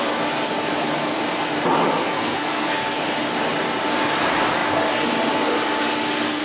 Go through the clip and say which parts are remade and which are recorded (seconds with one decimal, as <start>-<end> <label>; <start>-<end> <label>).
0.0-2.0 recorded; 2.0-3.0 remade; 3.0-6.4 recorded